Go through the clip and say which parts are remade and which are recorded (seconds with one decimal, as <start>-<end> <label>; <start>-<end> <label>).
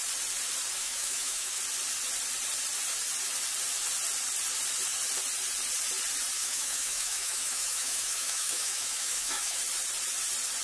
0.0-0.8 recorded; 0.8-1.6 remade; 1.6-6.4 recorded; 6.4-9.6 remade; 9.6-10.6 recorded